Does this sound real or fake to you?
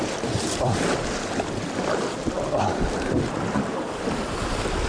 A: fake